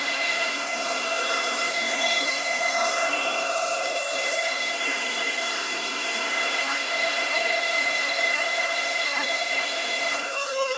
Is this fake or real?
fake